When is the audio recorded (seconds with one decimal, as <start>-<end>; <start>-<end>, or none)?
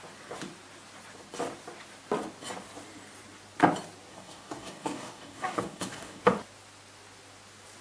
0.0-4.1; 6.2-7.8